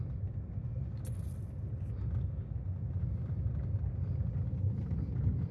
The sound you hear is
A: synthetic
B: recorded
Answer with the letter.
B